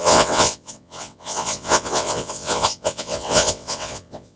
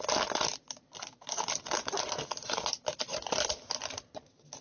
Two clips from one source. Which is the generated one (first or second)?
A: first